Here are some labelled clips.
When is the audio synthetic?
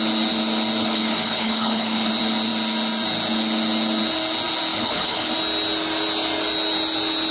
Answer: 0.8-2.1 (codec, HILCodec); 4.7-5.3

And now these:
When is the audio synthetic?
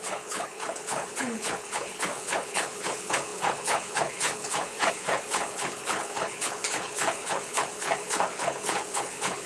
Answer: 0.0-9.5 (codec, HILCodec)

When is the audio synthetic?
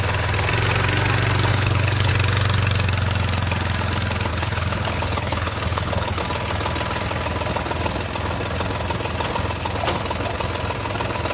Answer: 1.5-2.1 (codec, HILCodec); 4.3-6.2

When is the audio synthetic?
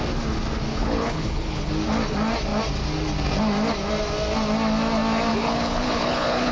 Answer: 0.7-1.7 (codec, HILCodec); 5.3-6.5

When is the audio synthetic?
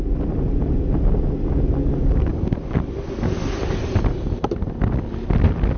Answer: none